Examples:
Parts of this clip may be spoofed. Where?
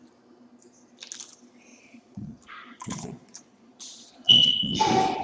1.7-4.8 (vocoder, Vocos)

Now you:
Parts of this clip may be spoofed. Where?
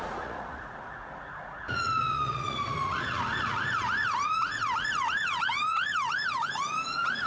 0.0-7.3 (vocoder, Vocos)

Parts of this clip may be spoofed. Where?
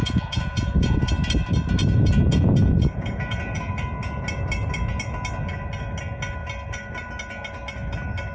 0.0-1.1 (vocoder, Vocos); 1.8-3.6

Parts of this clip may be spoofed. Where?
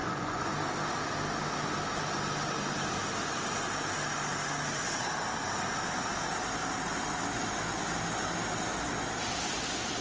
0.0-0.5 (vocoder, Vocos)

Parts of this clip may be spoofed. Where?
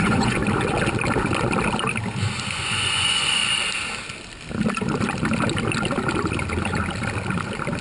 0.0-0.4 (vocoder, Vocos); 2.5-3.4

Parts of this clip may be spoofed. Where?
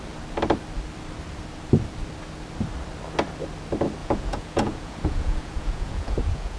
4.0-6.6 (vocoder, Vocos)